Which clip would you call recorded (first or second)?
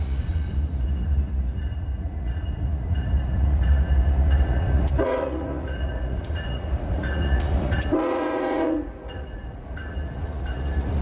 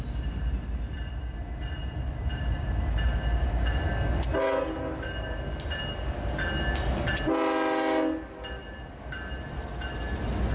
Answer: second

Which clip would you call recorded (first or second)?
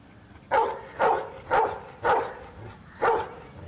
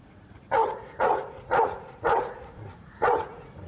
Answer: first